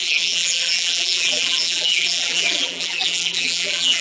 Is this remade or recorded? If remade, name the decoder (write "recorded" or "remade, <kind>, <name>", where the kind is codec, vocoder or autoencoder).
remade, vocoder, BigVGAN v2